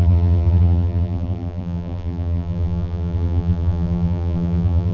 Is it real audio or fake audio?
fake